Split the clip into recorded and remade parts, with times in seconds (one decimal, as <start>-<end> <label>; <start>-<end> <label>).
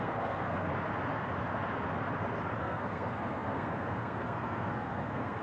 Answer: 0.0-0.7 remade; 0.7-2.6 recorded; 2.6-5.4 remade